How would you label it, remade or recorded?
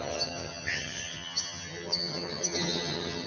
remade